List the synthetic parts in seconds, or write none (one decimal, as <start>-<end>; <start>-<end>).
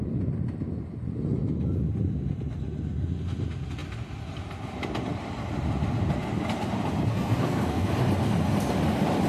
7.1-7.9